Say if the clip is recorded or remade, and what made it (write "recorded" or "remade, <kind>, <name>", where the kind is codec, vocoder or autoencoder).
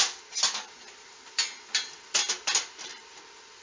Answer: recorded